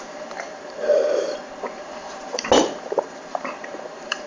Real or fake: fake